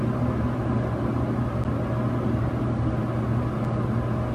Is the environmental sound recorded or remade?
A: recorded